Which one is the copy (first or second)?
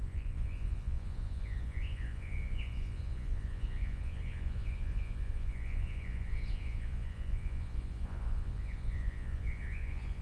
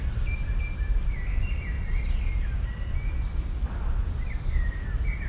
first